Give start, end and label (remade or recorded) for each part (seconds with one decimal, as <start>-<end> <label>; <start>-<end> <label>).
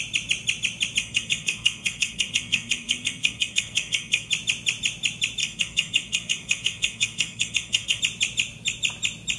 0.0-1.0 recorded; 1.0-4.3 remade; 4.3-5.4 recorded; 5.4-8.0 remade; 8.0-9.4 recorded